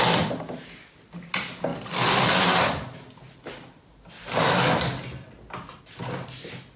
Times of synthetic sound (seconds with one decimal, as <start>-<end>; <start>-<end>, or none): none